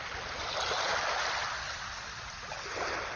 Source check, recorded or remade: recorded